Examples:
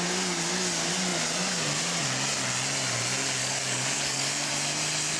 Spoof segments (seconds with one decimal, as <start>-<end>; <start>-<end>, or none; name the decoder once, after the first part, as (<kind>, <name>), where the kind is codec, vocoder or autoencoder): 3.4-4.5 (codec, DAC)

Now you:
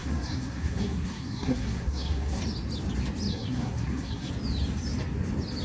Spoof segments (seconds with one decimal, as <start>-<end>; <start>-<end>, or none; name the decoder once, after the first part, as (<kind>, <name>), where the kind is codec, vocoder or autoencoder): 0.0-2.4 (codec, SNAC); 3.3-4.3

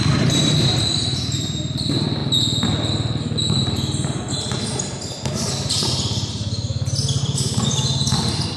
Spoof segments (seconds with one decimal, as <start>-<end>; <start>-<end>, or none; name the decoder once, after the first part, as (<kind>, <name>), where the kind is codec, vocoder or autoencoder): 0.0-2.2 (vocoder, BigVGAN v2); 7.2-8.6

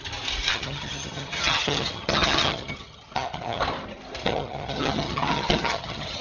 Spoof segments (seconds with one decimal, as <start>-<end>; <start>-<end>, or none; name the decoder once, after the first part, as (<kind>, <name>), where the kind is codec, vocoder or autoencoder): 0.5-3.6 (vocoder, HiFi-GAN); 4.2-6.2

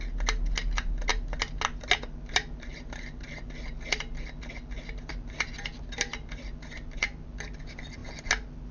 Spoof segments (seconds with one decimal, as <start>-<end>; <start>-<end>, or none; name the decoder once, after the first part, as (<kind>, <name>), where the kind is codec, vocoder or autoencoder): none

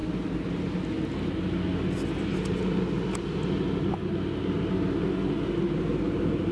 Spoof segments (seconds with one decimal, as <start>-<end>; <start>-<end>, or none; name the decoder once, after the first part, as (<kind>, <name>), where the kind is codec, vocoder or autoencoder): none